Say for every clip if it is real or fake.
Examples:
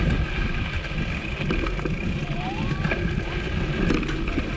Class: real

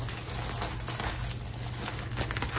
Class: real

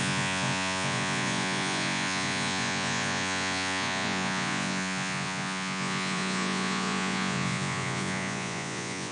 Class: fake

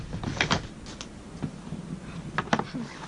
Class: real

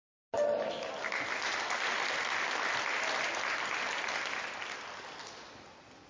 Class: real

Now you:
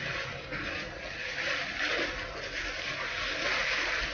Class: real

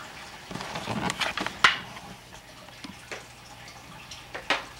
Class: real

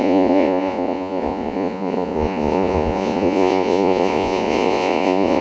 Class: fake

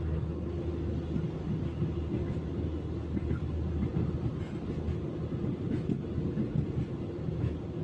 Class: real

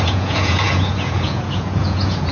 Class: fake